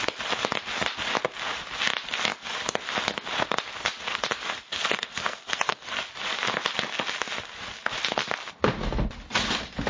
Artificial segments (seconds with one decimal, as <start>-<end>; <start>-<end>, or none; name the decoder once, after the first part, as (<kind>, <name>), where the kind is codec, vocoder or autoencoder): 4.7-6.0 (codec, SNAC)